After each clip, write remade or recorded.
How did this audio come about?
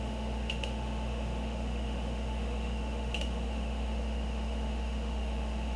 remade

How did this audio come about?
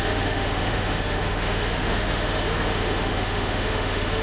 remade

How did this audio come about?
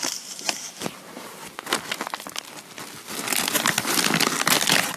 recorded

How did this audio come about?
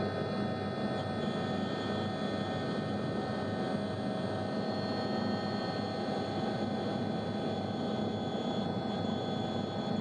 recorded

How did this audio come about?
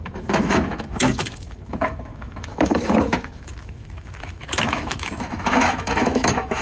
remade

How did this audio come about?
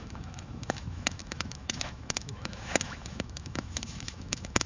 remade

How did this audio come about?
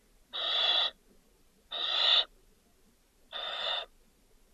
recorded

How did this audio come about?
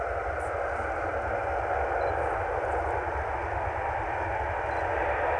recorded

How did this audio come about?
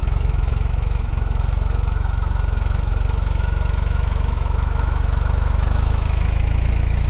remade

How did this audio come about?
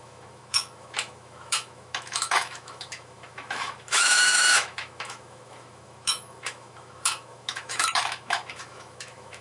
remade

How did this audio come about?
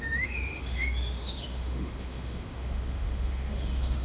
remade